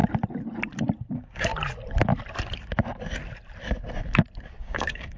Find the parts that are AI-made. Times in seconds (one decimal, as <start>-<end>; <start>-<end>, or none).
1.1-1.5; 4.6-5.2